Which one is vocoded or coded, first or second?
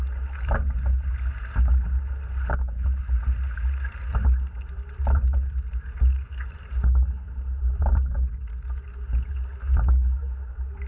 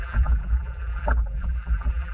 second